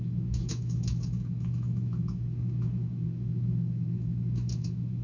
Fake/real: fake